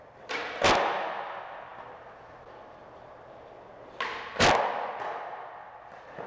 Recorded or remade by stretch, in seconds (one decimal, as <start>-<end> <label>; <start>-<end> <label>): 0.0-6.3 recorded